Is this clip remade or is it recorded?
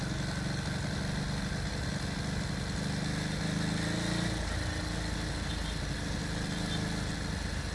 recorded